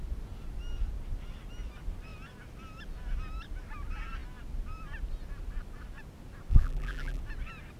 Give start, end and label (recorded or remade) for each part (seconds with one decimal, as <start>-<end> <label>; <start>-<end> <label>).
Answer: 0.0-6.5 recorded; 6.5-7.2 remade; 7.2-7.8 recorded